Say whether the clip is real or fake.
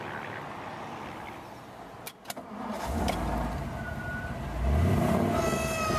real